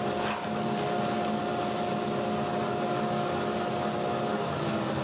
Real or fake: real